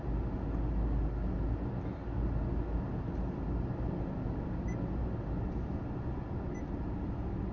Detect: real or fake real